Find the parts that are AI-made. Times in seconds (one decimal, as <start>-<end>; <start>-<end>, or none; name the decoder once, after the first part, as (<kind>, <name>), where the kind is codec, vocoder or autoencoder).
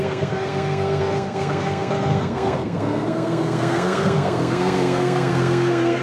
0.0-6.0 (codec, SNAC)